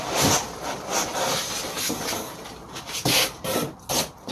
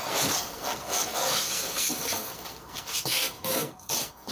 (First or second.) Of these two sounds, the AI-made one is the second